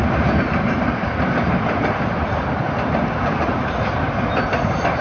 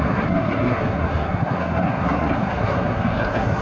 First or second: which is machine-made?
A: second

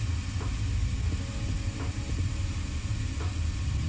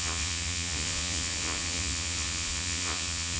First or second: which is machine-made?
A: second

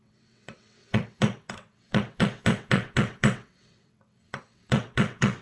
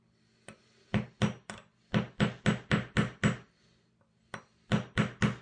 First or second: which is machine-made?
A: first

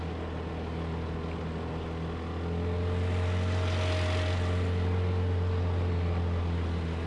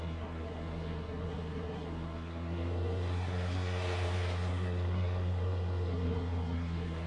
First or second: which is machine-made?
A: second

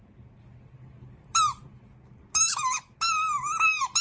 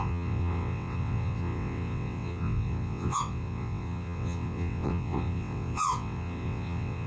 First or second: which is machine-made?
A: second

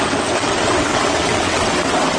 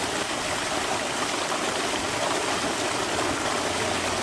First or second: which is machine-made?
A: first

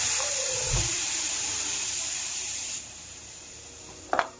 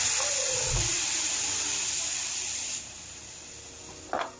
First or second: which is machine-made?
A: first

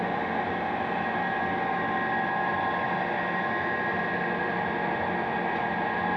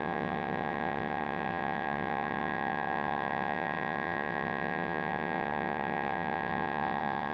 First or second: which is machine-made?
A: second